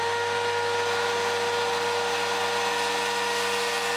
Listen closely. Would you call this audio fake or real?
real